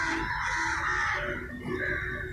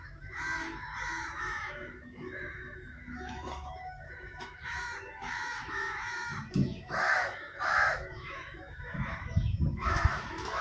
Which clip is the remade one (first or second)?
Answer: second